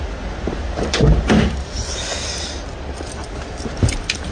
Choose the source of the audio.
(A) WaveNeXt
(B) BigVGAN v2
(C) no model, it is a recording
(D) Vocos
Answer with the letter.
C